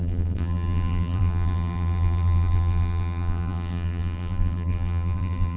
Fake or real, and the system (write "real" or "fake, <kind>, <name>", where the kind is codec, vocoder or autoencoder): fake, vocoder, BigVGAN v2